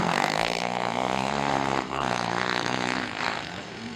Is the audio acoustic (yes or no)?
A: no